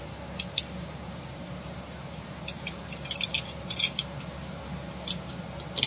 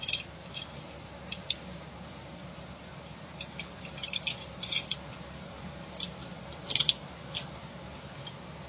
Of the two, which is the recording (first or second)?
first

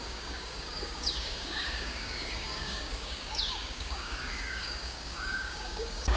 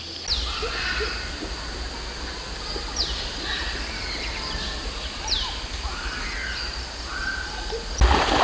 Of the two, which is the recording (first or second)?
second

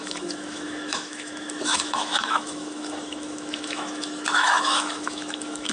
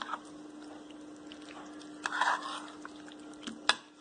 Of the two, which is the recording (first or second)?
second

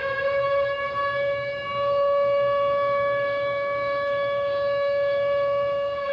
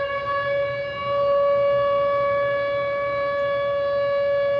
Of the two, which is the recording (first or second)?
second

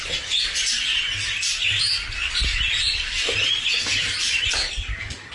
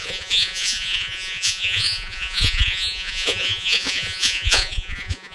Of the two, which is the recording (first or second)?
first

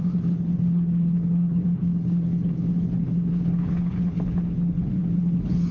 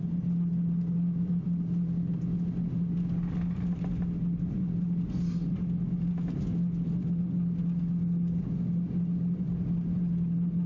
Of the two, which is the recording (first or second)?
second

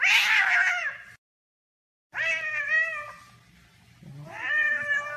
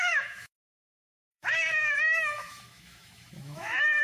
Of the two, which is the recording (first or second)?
first